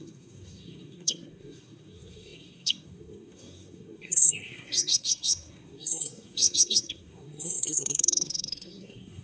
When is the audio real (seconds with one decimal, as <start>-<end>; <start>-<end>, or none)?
none